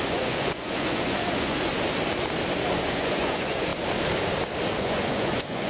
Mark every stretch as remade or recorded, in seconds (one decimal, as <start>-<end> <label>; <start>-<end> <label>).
0.0-1.7 remade; 1.7-2.7 recorded; 2.7-3.7 remade; 3.7-4.8 recorded; 4.8-5.7 remade